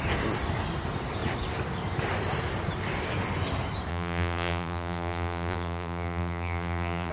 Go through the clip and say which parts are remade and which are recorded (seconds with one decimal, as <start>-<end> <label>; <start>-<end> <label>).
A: 0.0-3.9 recorded; 3.9-7.1 remade